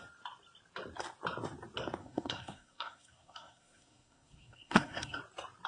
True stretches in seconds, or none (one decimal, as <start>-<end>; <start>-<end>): 0.0-2.0; 5.2-5.7

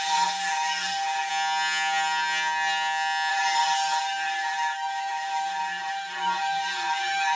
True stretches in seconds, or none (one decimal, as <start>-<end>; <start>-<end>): 1.3-3.3

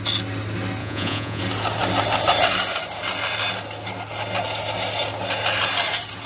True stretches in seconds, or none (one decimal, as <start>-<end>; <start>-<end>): 0.0-0.8; 1.4-6.3

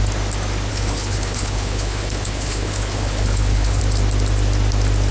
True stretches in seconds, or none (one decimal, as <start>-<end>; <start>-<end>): 0.0-0.7; 3.8-5.1

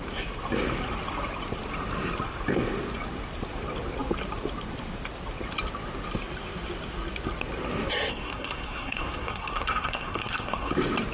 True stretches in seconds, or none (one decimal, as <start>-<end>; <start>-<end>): 0.0-8.1; 10.7-11.1